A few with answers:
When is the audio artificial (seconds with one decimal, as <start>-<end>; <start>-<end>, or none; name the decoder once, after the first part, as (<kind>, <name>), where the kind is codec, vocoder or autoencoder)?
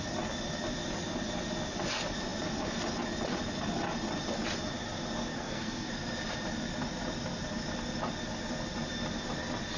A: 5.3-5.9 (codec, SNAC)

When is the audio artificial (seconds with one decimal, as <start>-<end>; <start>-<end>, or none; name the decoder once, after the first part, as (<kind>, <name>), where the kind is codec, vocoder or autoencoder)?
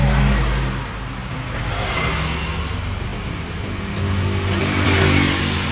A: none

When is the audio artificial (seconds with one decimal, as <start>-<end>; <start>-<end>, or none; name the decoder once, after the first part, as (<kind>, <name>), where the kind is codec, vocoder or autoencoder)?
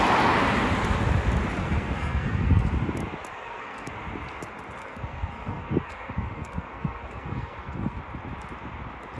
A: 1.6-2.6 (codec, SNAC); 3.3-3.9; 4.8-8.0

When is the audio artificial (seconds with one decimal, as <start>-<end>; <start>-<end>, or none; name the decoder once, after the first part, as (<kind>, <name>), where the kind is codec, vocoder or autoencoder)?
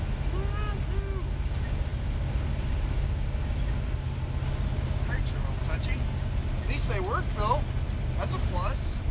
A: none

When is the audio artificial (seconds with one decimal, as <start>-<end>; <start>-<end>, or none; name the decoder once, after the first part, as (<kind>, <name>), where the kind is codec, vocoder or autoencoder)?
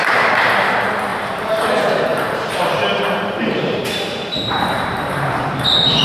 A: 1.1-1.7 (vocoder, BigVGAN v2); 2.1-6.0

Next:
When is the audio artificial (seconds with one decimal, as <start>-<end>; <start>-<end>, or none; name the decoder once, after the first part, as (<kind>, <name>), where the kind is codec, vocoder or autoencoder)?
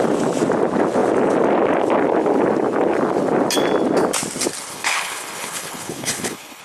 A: 4.7-6.6 (codec, HILCodec)